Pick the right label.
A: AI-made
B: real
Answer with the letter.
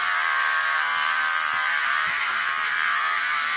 A